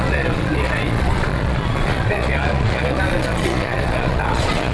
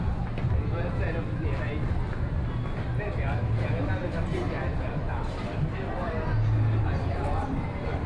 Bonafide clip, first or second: second